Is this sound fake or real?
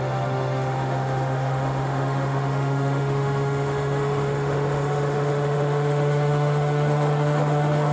fake